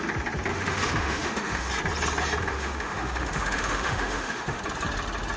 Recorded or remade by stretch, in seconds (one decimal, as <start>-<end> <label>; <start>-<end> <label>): 0.0-0.5 recorded; 0.5-1.7 remade; 1.7-2.5 recorded; 2.5-4.6 remade; 4.6-5.4 recorded